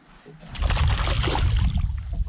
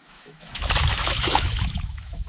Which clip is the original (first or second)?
first